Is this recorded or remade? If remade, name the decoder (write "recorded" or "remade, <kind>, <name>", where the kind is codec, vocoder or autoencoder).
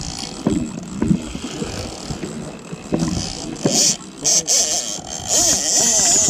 recorded